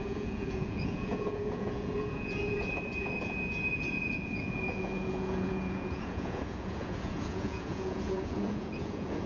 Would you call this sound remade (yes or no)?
yes